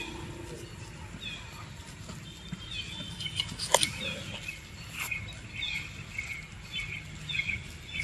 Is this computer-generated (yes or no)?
no